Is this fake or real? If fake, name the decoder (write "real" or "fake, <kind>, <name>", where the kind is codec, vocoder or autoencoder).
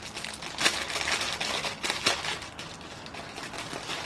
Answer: real